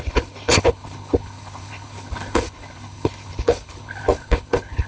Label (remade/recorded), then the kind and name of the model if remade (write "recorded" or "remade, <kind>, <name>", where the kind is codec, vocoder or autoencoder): remade, codec, HILCodec